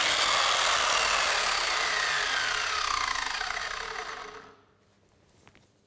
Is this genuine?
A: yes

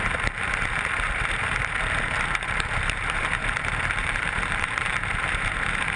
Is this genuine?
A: no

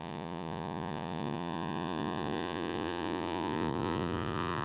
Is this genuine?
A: no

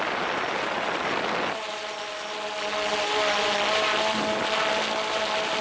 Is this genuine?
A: yes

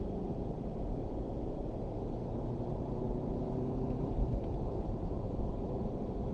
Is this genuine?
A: no